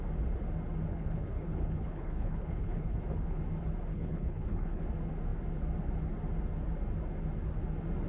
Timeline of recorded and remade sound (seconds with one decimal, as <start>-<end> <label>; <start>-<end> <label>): 0.0-0.9 recorded; 0.9-3.4 remade; 3.4-3.9 recorded; 3.9-4.8 remade; 4.8-8.1 recorded